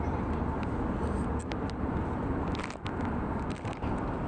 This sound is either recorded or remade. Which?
recorded